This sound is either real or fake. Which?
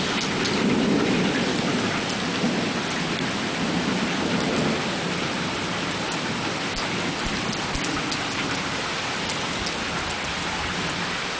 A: real